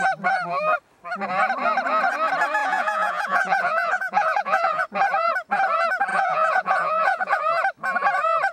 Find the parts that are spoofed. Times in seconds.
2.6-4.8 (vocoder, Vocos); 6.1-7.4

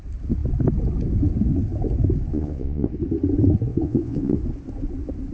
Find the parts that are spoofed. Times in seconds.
2.3-2.9 (vocoder, Vocos); 3.7-4.4

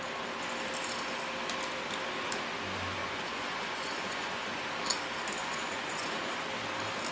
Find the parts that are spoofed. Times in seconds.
3.0-4.6 (vocoder, Vocos); 5.4-6.3

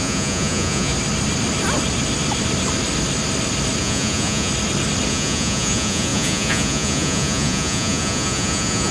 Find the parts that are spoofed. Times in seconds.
0.0-0.9 (vocoder, Vocos); 3.8-4.5; 5.1-8.9

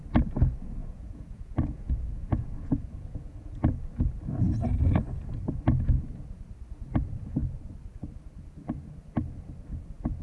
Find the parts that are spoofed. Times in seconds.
0.8-3.6 (vocoder, Vocos)

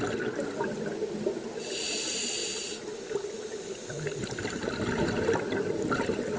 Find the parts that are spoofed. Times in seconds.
none

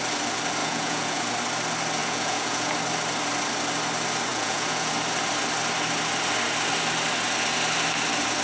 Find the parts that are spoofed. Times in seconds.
0.6-1.2 (vocoder, Vocos); 2.0-2.7; 4.3-4.9

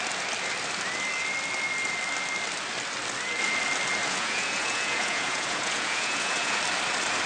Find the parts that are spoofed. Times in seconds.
4.0-6.6 (vocoder, Vocos)